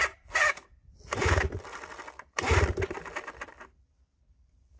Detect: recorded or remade remade